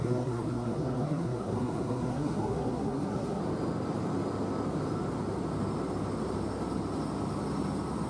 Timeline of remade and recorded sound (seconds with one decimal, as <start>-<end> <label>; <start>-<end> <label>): 0.0-3.4 remade; 3.4-8.1 recorded

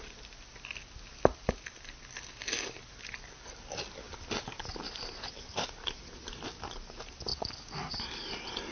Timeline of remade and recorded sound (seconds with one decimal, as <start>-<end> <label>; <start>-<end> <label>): 0.0-8.7 recorded

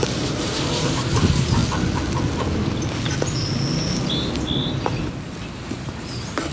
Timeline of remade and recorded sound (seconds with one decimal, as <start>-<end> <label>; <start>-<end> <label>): 0.0-1.6 remade; 1.6-5.5 recorded; 5.5-6.5 remade